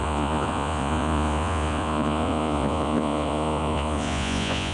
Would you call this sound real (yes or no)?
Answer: no